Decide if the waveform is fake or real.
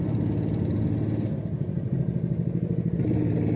real